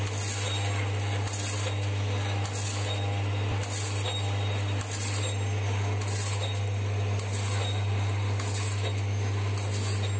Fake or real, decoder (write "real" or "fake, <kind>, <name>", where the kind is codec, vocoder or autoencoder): real